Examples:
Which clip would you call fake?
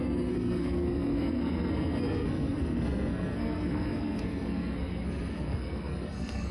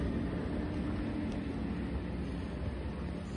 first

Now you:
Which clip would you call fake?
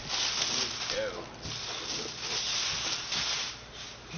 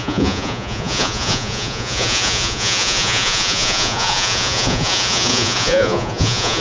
second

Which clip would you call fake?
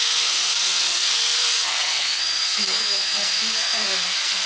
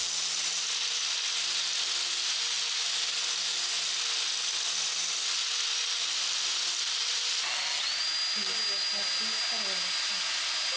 first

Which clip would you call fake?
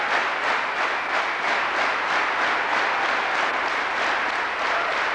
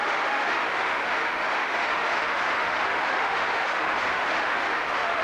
second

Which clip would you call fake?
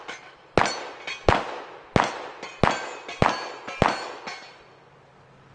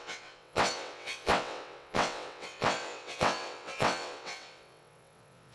second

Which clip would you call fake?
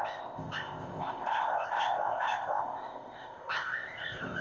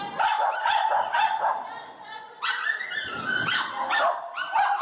first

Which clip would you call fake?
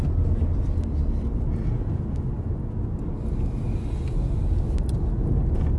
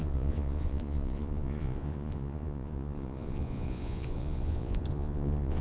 second